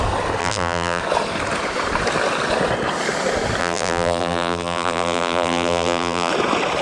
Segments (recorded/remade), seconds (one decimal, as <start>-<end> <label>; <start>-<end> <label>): 0.0-0.4 recorded; 0.4-1.0 remade; 1.0-3.6 recorded; 3.6-6.3 remade; 6.3-6.8 recorded